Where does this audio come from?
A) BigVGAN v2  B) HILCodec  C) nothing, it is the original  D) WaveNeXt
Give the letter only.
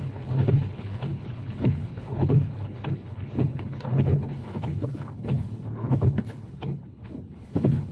B